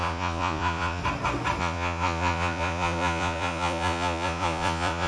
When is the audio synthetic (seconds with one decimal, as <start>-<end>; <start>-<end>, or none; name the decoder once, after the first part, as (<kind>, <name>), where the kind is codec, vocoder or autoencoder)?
0.0-1.0 (vocoder, Vocos); 1.6-5.1